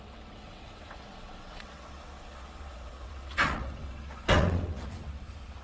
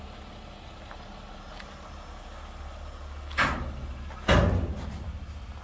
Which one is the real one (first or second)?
second